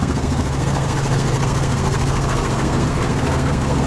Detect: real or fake fake